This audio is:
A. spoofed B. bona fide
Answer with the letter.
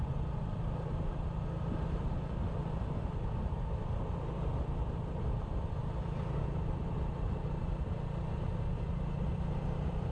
B